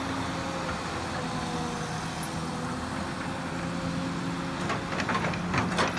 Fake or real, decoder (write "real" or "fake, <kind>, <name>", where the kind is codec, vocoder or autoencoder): real